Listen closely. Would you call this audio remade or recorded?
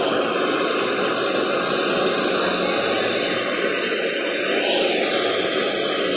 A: recorded